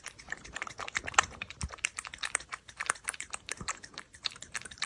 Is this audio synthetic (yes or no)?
yes